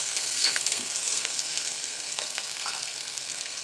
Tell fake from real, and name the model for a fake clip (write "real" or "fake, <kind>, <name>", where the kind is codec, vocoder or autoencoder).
fake, codec, SNAC